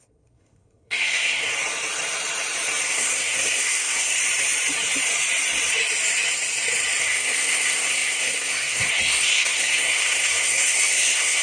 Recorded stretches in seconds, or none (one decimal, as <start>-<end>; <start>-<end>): 1.5-2.9; 4.2-7.0